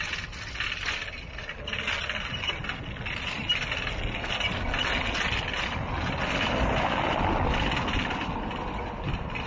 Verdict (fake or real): real